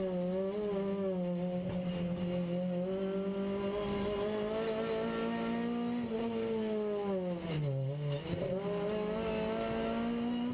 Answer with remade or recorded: recorded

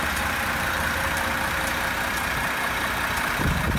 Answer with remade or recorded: remade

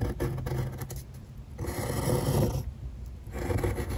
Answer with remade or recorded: recorded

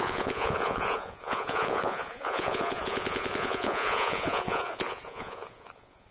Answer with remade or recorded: remade